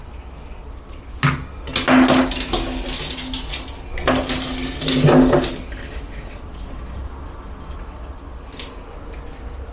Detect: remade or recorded recorded